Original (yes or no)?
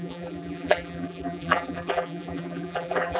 no